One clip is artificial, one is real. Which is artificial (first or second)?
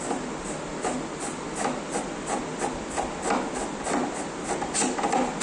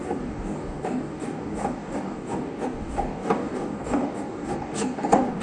second